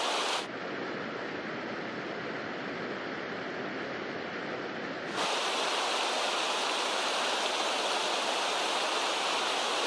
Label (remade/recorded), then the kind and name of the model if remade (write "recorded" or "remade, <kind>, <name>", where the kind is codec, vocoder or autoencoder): recorded